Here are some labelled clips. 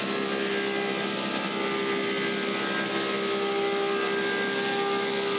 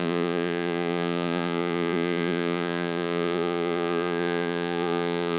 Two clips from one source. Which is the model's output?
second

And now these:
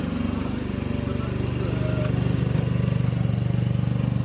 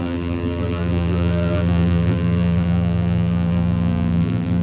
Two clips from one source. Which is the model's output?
second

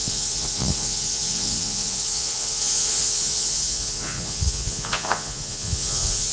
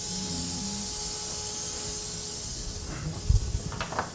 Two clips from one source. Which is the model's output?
first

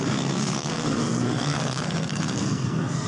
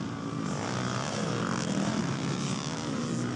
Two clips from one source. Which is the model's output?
first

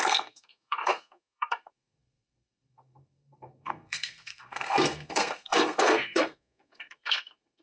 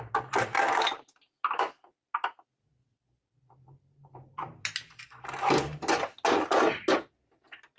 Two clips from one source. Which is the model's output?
first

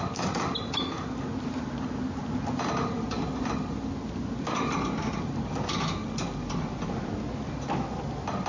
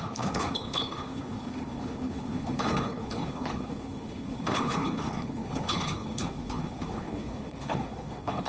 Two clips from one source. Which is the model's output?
second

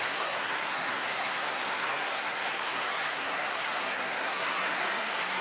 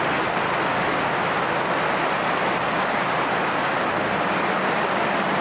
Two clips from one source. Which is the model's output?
first